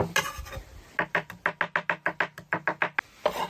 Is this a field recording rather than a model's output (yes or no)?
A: yes